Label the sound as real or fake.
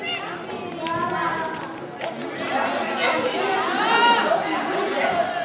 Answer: real